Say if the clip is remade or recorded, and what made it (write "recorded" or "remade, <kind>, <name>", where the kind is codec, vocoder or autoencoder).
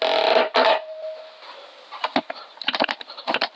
recorded